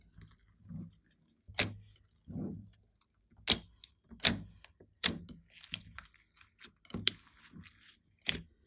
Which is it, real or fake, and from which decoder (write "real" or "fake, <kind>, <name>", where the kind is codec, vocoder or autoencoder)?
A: real